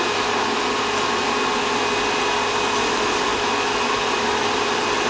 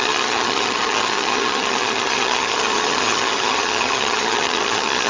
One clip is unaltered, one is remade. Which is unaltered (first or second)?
first